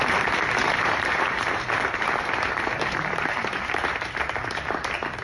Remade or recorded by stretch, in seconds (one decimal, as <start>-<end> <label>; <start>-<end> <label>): 0.0-0.6 recorded; 0.6-3.7 remade; 3.7-5.2 recorded